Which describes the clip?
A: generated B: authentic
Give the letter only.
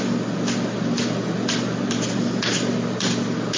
B